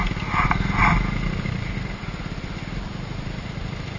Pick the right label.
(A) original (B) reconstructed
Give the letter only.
A